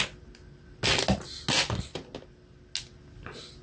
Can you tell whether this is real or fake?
real